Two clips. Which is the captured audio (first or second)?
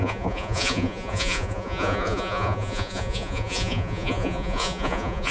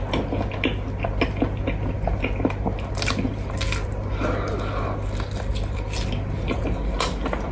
second